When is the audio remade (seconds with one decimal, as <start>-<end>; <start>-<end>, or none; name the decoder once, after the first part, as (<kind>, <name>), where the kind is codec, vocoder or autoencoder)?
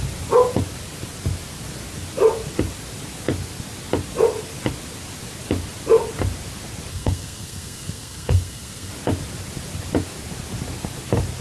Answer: 6.9-8.9 (codec, SNAC)